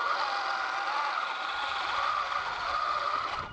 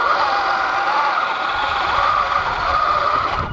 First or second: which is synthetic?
second